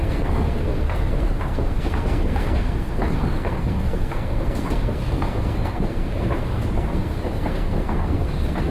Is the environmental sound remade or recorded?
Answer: remade